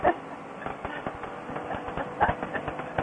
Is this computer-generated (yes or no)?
no